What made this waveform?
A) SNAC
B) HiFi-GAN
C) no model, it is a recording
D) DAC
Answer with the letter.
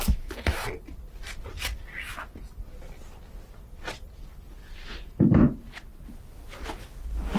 C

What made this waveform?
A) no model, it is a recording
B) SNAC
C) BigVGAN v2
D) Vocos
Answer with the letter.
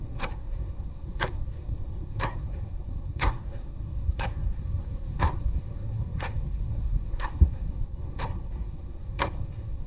B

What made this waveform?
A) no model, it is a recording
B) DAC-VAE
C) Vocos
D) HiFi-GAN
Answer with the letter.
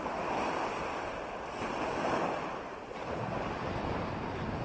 A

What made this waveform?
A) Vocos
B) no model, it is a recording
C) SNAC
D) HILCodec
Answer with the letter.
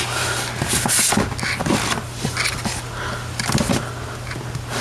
B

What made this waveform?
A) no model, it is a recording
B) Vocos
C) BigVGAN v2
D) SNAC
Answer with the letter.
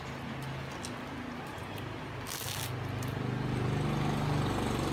A